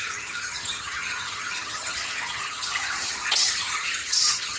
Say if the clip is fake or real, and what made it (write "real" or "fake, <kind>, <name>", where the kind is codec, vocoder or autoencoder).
fake, vocoder, HiFi-GAN